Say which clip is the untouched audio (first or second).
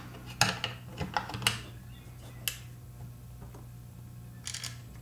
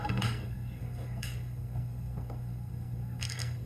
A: first